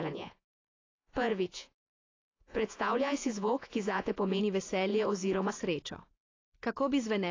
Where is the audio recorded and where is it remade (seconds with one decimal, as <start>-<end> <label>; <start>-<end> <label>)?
0.0-4.4 remade; 4.4-4.9 recorded; 4.9-5.5 remade; 5.5-7.3 recorded